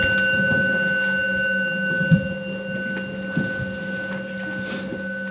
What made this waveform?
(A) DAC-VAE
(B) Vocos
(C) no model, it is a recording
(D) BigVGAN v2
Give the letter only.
C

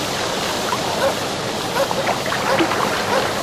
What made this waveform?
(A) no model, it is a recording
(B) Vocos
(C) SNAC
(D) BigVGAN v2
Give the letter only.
A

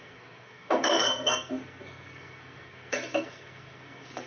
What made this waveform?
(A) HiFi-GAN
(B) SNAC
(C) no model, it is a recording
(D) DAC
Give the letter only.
B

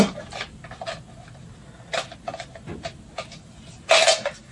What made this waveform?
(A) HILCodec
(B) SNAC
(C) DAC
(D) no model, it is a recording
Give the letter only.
D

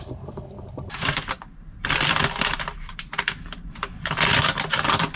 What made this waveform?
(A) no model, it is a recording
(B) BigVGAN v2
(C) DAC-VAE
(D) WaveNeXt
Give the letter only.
B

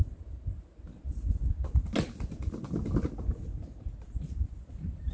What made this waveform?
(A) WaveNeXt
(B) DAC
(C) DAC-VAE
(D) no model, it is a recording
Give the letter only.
D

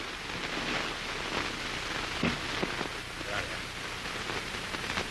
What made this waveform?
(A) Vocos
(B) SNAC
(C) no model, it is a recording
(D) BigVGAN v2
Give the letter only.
C